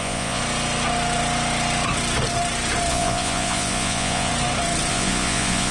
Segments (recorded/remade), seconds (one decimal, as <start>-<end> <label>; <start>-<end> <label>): 0.0-0.4 remade; 0.4-2.9 recorded; 2.9-4.3 remade; 4.3-4.9 recorded; 4.9-5.7 remade